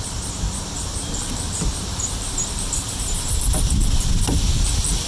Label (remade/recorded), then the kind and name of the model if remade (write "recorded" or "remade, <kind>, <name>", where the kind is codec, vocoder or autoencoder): remade, vocoder, BigVGAN v2